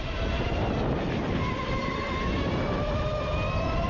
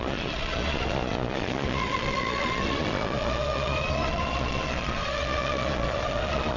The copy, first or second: second